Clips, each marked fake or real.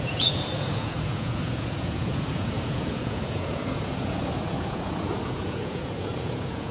fake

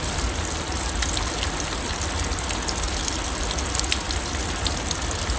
real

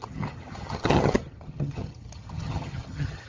fake